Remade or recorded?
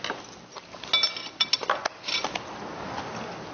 recorded